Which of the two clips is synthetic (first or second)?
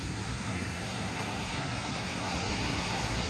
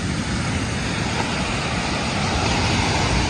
first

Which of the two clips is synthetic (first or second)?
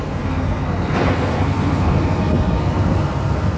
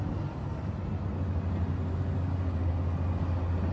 first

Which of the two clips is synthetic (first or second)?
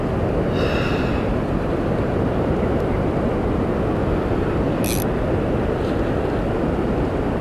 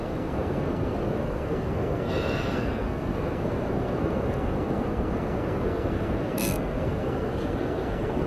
second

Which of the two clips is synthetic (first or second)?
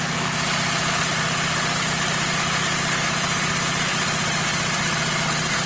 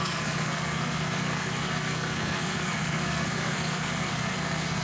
second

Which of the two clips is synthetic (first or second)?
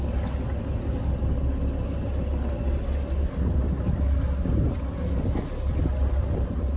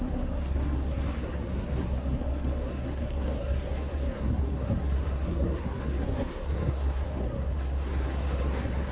second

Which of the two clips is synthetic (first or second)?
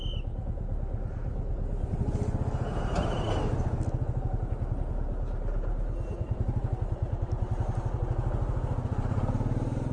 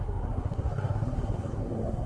second